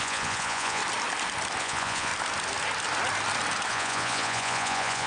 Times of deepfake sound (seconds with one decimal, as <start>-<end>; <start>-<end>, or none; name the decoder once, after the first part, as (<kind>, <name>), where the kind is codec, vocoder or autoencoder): 0.0-0.8 (vocoder, Vocos); 1.6-2.1; 3.7-5.1